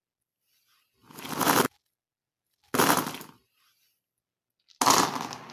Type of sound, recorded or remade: recorded